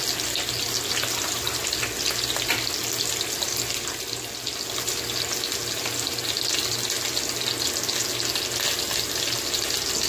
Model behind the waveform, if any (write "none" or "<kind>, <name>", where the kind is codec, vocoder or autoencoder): none